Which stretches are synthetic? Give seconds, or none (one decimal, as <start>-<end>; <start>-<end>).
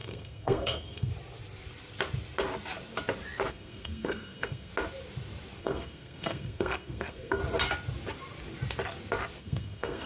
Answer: 0.0-1.1; 3.5-4.7; 5.6-7.4; 9.4-10.1